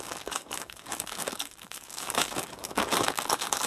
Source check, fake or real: fake